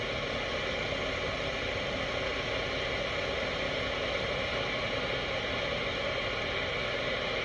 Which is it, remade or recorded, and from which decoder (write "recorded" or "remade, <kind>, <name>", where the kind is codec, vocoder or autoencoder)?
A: recorded